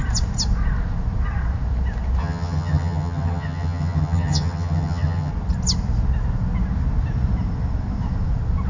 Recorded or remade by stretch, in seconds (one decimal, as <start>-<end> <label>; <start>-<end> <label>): 0.0-2.2 recorded; 2.2-5.3 remade; 5.3-8.7 recorded